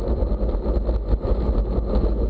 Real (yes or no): yes